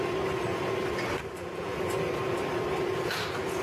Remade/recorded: recorded